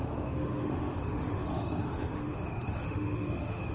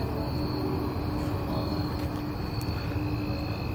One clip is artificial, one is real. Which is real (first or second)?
second